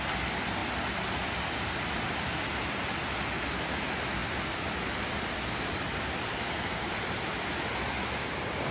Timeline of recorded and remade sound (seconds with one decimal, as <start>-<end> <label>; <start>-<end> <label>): 0.0-8.7 recorded